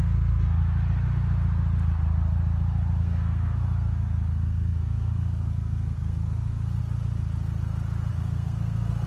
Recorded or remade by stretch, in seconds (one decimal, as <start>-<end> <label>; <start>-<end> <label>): 0.0-0.6 remade; 0.6-3.0 recorded; 3.0-6.8 remade; 6.8-8.1 recorded; 8.1-9.1 remade